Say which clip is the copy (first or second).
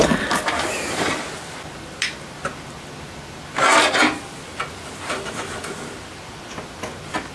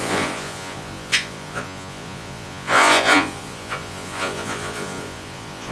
second